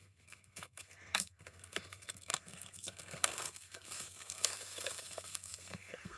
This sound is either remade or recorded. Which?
remade